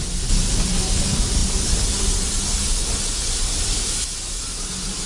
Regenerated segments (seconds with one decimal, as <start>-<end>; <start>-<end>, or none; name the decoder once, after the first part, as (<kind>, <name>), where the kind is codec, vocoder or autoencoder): none